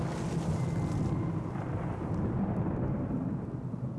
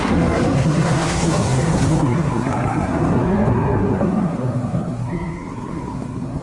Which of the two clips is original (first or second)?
first